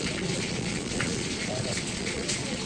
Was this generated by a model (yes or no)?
yes